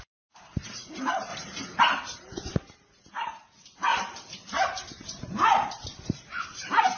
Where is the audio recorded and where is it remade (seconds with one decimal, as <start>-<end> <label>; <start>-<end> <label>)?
0.0-1.3 remade; 1.3-1.8 recorded; 1.8-3.9 remade; 3.9-4.6 recorded; 4.6-7.0 remade